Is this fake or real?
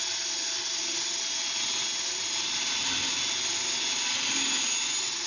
real